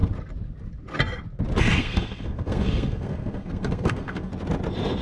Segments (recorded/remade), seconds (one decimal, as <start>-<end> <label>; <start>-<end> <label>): 0.0-1.6 recorded; 1.6-4.3 remade; 4.3-5.0 recorded